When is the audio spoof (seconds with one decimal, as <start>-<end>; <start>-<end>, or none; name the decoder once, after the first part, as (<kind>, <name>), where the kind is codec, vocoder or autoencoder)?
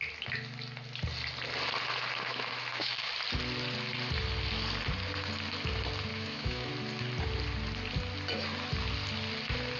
2.3-3.1 (autoencoder, DAC-VAE); 6.1-6.7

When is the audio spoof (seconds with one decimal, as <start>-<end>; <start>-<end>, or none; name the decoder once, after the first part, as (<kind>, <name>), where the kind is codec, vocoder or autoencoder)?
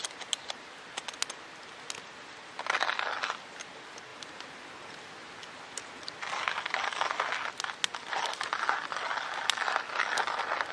none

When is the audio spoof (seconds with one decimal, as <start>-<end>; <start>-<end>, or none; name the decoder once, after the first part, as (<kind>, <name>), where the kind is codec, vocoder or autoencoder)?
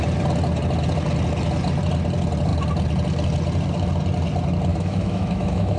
4.7-5.8 (autoencoder, DAC-VAE)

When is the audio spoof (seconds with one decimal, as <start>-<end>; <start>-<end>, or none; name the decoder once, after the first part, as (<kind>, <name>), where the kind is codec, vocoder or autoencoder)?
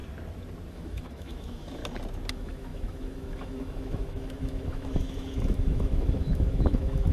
0.7-1.8 (autoencoder, DAC-VAE); 2.3-7.1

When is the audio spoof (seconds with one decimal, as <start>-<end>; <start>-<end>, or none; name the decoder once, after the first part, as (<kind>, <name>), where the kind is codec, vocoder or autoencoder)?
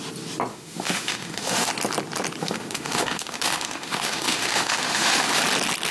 0.5-1.7 (autoencoder, DAC-VAE); 2.4-5.4